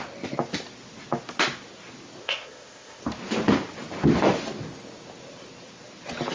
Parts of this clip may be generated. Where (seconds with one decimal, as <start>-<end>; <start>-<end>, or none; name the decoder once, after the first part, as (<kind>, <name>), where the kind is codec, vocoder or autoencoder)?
2.2-3.0 (codec, ZipCodec)